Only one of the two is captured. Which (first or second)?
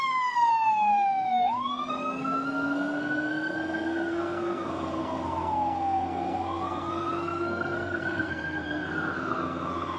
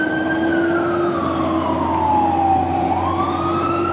second